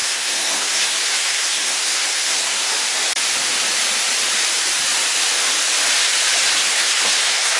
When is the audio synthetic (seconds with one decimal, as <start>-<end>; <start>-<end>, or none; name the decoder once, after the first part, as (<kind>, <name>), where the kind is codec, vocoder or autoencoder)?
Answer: 0.0-2.7 (codec, SNAC); 6.5-7.6